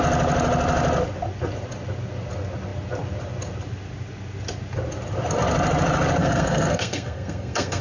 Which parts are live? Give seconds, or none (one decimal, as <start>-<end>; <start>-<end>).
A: 0.0-6.2